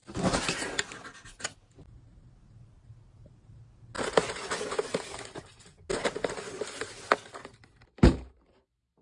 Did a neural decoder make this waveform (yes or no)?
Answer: no